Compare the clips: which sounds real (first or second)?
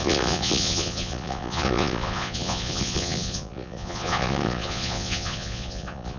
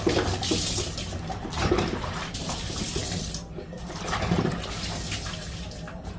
second